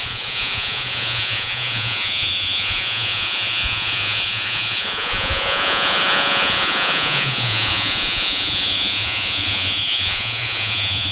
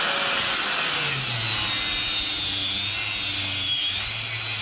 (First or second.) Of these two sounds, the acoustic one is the second